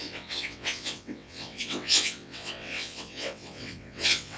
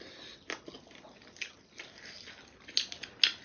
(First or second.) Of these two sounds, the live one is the second